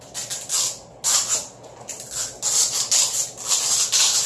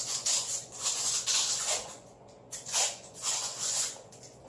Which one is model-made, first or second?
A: second